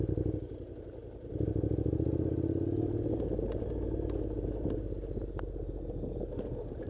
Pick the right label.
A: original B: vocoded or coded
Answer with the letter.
A